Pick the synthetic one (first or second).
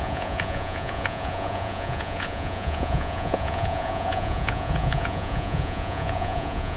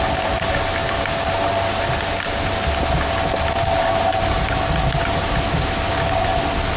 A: first